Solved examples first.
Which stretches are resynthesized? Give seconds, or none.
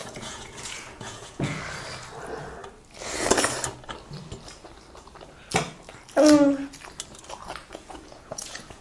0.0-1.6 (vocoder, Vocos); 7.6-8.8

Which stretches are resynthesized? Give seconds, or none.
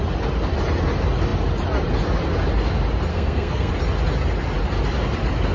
3.1-3.7 (codec, SNAC)